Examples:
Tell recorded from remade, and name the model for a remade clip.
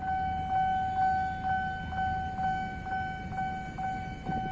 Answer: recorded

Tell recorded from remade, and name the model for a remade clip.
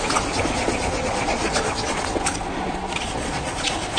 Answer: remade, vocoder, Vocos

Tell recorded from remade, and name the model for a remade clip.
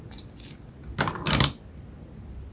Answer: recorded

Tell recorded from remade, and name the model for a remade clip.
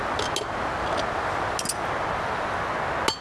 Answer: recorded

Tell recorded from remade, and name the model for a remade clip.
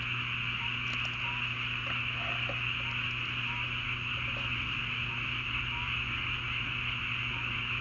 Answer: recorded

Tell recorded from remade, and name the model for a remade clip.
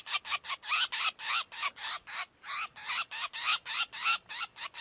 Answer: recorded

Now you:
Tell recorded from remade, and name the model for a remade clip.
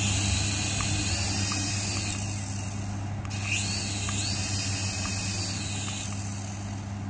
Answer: recorded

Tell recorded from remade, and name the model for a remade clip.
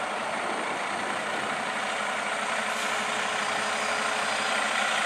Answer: recorded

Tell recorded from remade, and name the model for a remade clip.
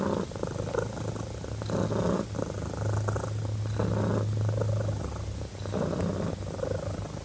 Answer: recorded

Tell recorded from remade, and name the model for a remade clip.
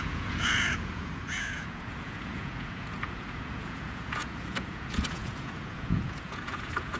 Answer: remade, vocoder, Vocos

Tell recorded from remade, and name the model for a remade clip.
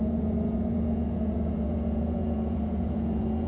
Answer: remade, vocoder, Vocos